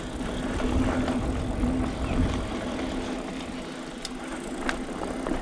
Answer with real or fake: real